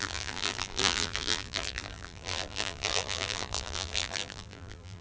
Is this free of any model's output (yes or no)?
no